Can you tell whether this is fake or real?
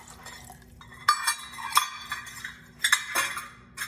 real